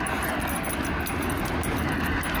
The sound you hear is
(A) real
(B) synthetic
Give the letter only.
A